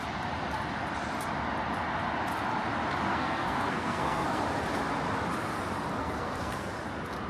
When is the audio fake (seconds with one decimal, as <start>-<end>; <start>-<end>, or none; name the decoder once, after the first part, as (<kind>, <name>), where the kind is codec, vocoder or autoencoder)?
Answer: 3.1-4.4 (codec, SNAC); 6.0-6.7